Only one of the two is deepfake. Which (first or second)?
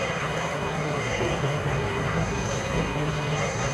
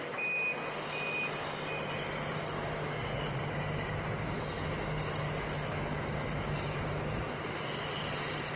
first